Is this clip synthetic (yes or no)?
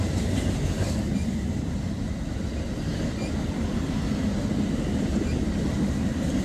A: no